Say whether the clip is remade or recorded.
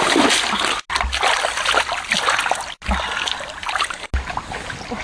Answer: recorded